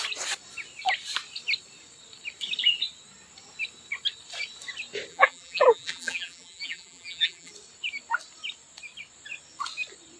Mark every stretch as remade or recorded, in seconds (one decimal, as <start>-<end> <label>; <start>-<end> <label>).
0.0-5.1 recorded; 5.1-7.5 remade; 7.5-10.2 recorded